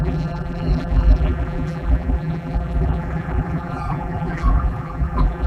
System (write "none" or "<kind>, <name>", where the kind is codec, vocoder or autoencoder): vocoder, BigVGAN v2